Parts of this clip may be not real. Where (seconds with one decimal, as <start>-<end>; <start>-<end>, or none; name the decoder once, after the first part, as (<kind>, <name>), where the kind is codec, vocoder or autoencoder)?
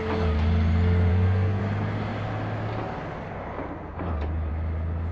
1.1-1.6 (codec, SNAC)